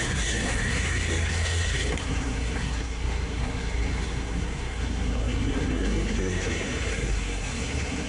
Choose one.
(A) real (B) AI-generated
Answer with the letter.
B